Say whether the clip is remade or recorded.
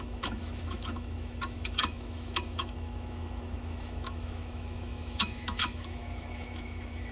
remade